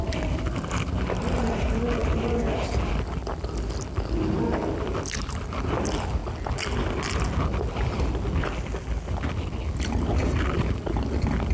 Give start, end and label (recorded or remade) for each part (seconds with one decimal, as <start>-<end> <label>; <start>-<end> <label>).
0.0-6.2 remade; 6.2-7.4 recorded; 7.4-11.5 remade